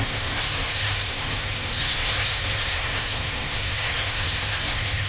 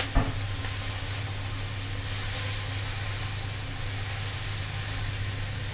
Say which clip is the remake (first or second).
first